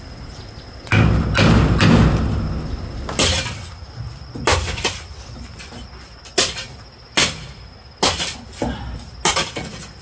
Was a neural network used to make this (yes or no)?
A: no